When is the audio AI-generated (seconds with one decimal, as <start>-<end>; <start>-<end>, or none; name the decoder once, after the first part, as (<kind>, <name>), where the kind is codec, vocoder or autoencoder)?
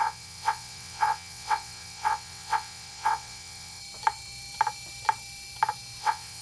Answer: 0.0-3.8 (vocoder, WaveNeXt); 6.0-6.4